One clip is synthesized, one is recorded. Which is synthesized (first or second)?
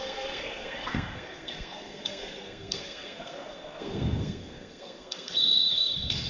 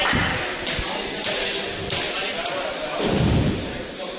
first